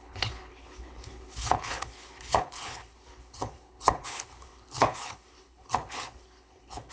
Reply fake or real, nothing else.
fake